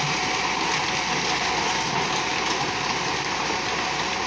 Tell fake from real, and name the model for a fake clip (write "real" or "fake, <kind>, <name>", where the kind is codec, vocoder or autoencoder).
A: real